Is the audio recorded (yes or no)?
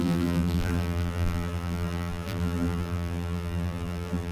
no